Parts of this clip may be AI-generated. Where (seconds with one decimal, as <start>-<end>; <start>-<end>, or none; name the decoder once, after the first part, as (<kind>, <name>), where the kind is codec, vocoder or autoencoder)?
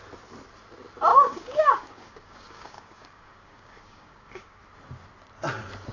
1.1-4.6 (codec, DAC)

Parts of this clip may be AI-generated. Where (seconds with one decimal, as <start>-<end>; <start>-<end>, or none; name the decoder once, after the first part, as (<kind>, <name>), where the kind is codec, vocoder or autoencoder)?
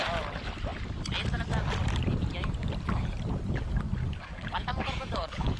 4.0-5.6 (codec, DAC)